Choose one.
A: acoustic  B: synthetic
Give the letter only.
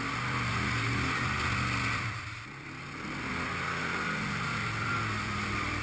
A